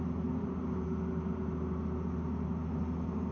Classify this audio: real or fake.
real